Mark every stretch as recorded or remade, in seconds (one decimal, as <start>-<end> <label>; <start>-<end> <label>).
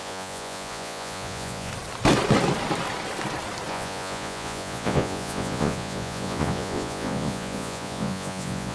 0.0-1.7 remade; 1.7-3.7 recorded; 3.7-8.7 remade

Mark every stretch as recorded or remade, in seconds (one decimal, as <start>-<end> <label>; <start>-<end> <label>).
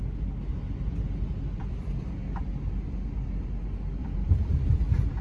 0.0-5.2 recorded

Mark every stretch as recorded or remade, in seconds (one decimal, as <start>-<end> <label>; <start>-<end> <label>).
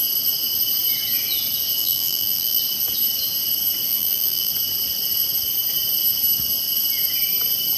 0.0-1.8 recorded; 1.8-2.6 remade; 2.6-3.9 recorded; 3.9-4.5 remade; 4.5-7.8 recorded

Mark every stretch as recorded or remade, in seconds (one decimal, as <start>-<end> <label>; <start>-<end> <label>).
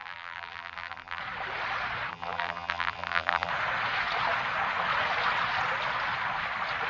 0.0-1.2 remade; 1.2-2.1 recorded; 2.1-3.5 remade; 3.5-6.9 recorded